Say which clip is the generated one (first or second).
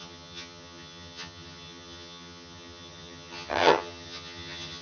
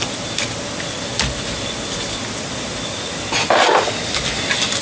first